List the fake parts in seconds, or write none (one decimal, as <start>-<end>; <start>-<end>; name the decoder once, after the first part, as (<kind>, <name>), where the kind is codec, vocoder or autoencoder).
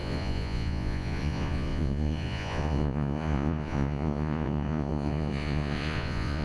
0.0-6.4 (vocoder, Vocos)